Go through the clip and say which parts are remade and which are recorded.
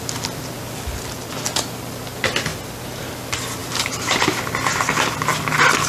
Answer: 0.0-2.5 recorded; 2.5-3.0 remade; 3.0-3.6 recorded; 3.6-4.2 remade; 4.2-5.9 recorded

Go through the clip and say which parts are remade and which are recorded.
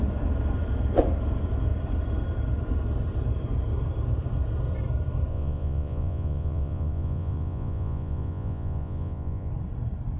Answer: 0.0-5.3 recorded; 5.3-9.5 remade; 9.5-10.2 recorded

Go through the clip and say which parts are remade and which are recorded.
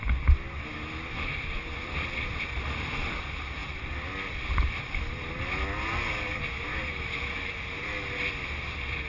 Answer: 0.0-0.7 recorded; 0.7-1.3 remade; 1.3-6.7 recorded; 6.7-7.5 remade; 7.5-9.1 recorded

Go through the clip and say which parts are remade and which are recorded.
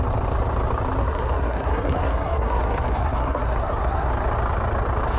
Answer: 0.0-1.0 recorded; 1.0-4.1 remade; 4.1-5.2 recorded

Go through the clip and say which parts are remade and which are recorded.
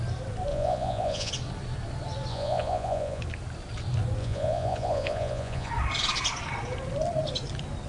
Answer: 0.0-0.5 recorded; 0.5-1.3 remade; 1.3-2.3 recorded; 2.3-3.2 remade; 3.2-4.2 recorded; 4.2-5.7 remade; 5.7-7.9 recorded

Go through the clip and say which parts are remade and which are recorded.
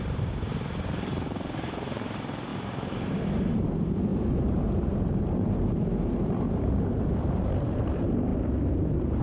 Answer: 0.0-9.2 remade